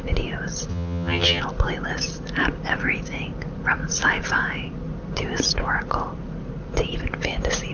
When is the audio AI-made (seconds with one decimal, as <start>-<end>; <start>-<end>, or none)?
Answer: 0.7-1.4